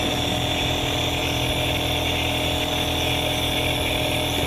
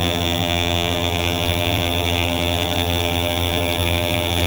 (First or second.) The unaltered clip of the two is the first